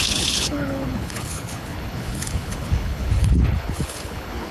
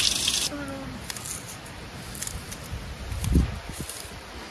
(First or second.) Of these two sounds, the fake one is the first